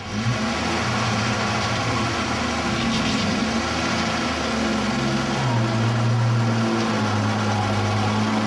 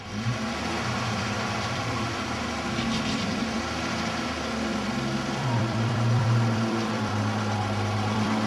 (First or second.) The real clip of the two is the first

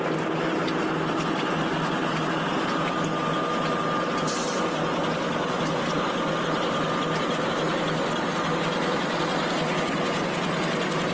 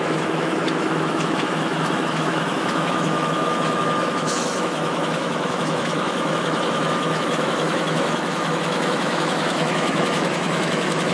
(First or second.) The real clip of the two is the first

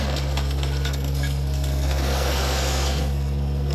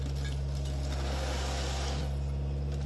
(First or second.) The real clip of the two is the second